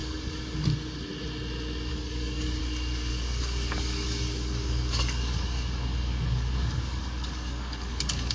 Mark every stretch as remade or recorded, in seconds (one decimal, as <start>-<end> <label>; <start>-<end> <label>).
0.0-0.7 remade; 0.7-1.9 recorded; 1.9-2.6 remade; 2.6-3.1 recorded; 3.1-8.3 remade